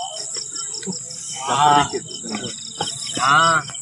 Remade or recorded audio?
recorded